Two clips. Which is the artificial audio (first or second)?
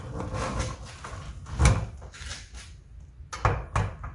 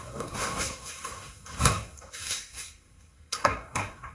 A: second